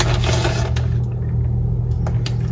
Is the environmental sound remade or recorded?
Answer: recorded